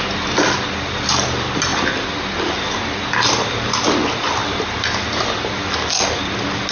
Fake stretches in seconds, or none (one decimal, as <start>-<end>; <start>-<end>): none